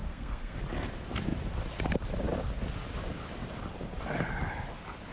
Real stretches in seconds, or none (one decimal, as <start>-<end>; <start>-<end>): 0.6-5.1